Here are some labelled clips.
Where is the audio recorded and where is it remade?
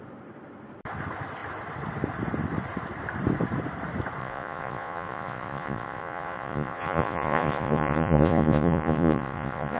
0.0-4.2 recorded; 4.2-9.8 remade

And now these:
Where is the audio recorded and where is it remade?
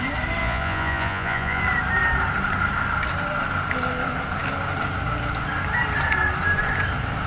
0.0-0.4 recorded; 0.4-1.6 remade; 1.6-7.3 recorded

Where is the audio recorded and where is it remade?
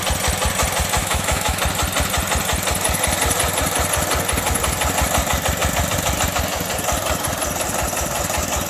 0.0-1.0 recorded; 1.0-1.6 remade; 1.6-8.7 recorded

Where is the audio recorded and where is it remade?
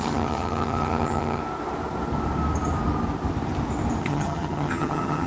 0.0-1.4 remade; 1.4-4.0 recorded; 4.0-5.3 remade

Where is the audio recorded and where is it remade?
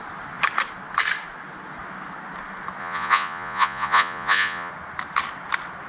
0.0-2.8 recorded; 2.8-4.7 remade; 4.7-5.9 recorded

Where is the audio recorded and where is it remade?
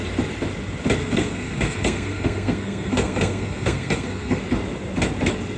0.0-1.0 recorded; 1.0-4.4 remade; 4.4-5.6 recorded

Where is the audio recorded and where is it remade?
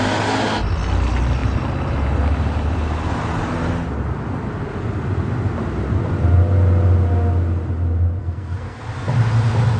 0.0-8.2 recorded; 8.2-8.8 remade; 8.8-9.8 recorded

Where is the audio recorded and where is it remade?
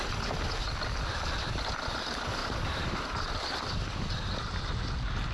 0.0-2.4 recorded; 2.4-3.0 remade; 3.0-5.3 recorded